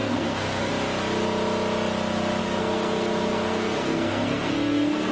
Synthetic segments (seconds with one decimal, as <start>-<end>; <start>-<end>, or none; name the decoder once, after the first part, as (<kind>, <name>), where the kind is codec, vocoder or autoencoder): 0.0-0.7 (codec, SNAC); 2.4-5.1